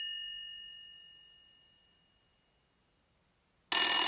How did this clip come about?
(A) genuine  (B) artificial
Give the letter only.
A